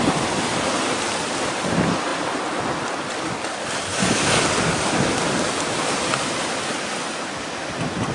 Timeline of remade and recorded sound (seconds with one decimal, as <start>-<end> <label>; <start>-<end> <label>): 0.0-3.9 recorded; 3.9-4.9 remade; 4.9-8.1 recorded